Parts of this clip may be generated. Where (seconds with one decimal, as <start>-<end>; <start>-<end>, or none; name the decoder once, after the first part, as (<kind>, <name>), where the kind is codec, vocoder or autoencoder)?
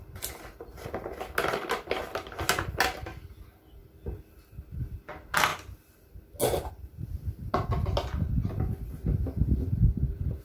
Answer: none